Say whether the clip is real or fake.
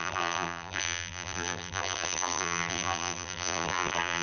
fake